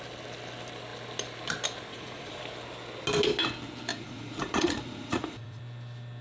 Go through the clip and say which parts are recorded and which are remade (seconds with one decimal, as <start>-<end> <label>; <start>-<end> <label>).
0.0-1.9 recorded; 1.9-2.4 remade; 2.4-3.9 recorded; 3.9-5.6 remade; 5.6-6.2 recorded